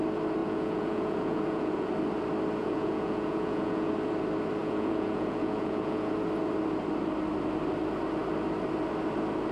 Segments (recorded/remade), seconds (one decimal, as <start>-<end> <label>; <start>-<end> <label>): 0.0-0.4 recorded; 0.4-1.9 remade; 1.9-2.6 recorded; 2.6-3.9 remade; 3.9-4.6 recorded; 4.6-6.1 remade; 6.1-9.5 recorded